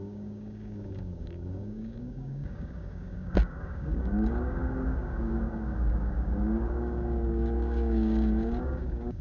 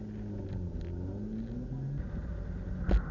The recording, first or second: second